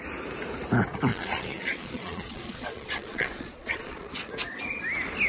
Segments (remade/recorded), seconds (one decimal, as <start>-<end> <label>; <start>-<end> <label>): 0.0-1.1 recorded; 1.1-4.3 remade; 4.3-5.3 recorded